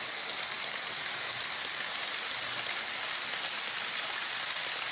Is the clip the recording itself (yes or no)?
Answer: yes